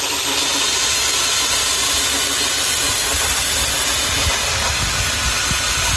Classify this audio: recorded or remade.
recorded